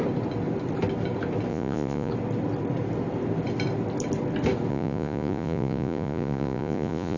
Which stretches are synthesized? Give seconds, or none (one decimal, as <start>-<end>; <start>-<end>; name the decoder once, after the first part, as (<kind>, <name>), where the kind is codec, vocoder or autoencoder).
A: 1.5-2.1 (vocoder, Vocos); 4.7-7.2